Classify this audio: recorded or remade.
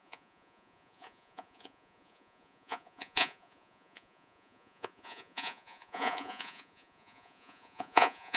remade